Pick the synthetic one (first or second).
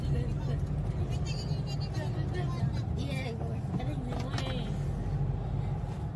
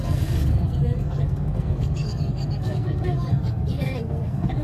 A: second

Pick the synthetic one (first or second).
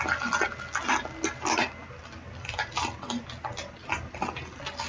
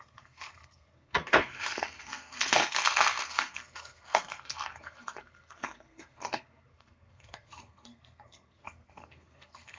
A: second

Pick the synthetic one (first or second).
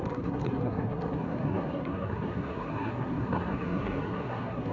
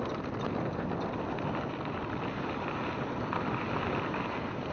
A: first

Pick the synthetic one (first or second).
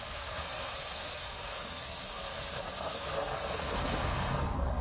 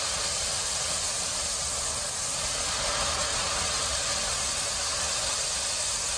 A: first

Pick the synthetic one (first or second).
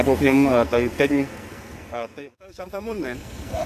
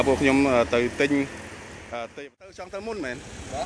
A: first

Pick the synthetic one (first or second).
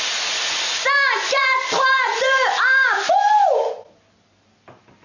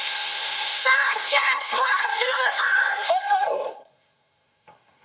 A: second